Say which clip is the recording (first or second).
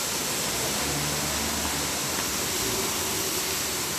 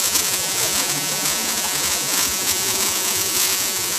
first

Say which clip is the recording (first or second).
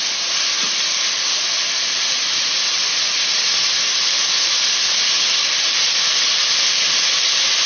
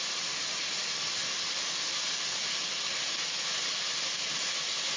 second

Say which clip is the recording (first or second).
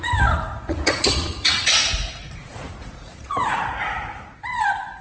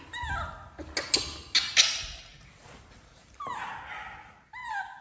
second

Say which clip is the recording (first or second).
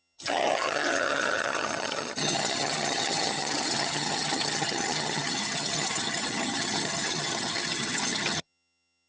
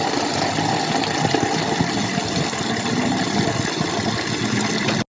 second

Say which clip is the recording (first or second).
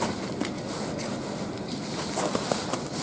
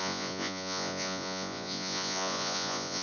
first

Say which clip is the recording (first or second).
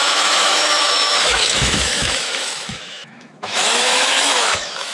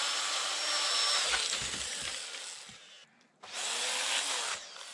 second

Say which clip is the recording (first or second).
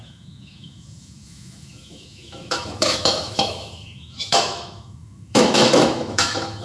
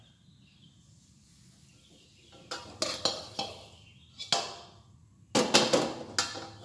second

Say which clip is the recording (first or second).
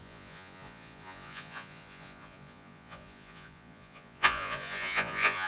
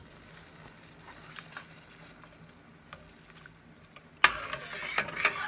second